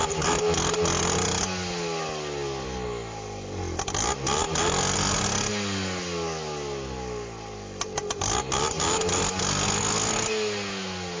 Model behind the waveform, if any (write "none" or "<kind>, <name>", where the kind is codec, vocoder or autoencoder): none